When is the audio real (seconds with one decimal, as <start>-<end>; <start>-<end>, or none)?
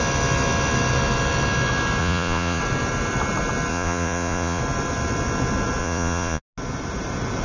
0.0-2.0; 2.6-3.7; 4.6-5.8; 6.4-7.4